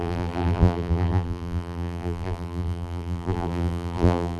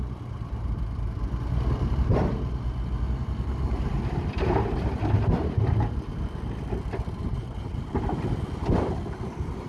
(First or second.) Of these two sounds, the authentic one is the second